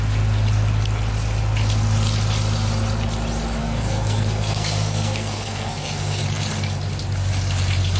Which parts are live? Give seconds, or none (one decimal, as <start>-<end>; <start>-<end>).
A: 0.0-3.6; 6.2-8.0